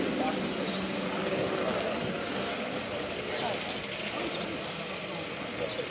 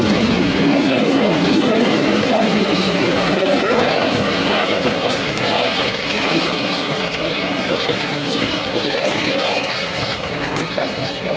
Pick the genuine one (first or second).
first